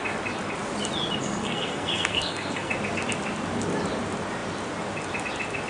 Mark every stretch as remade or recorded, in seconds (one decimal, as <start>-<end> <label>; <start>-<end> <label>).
0.0-1.2 recorded; 1.2-2.7 remade; 2.7-5.7 recorded